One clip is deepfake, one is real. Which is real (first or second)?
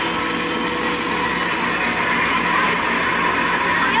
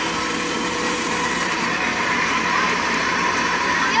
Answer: first